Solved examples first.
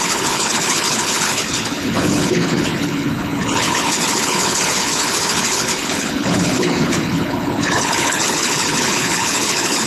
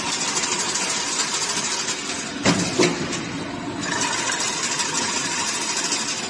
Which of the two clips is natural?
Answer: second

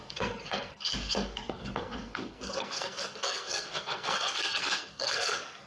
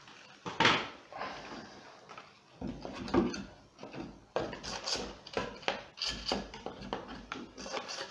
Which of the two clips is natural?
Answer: second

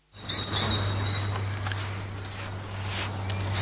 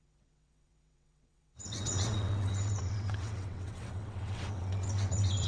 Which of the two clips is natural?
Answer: first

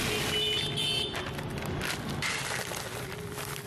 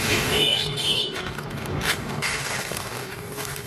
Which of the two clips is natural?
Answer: first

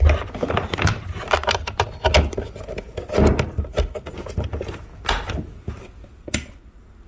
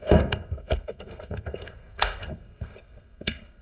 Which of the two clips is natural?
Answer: first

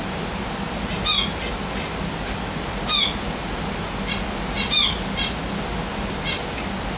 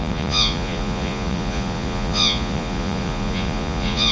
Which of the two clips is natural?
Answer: first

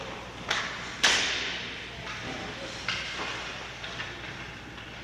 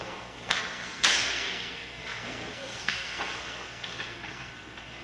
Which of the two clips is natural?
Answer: first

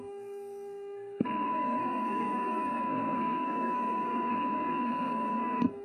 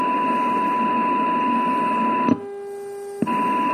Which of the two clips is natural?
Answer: second